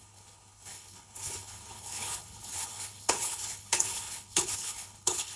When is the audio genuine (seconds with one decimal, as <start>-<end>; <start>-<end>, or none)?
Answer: none